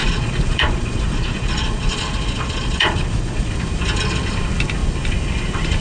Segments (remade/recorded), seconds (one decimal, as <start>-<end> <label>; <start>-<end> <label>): 0.0-3.5 remade; 3.5-5.8 recorded